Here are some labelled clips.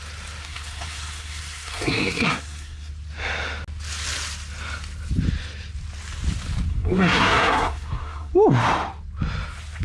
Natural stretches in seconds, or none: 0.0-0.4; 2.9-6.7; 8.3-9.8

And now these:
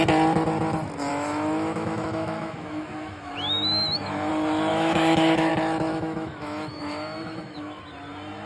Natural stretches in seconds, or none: 0.0-1.1; 4.3-4.7; 5.5-5.9; 7.8-8.5

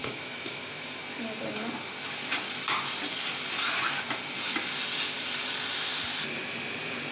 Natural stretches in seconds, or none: 1.0-7.1